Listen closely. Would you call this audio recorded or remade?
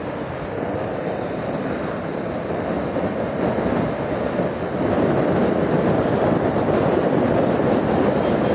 recorded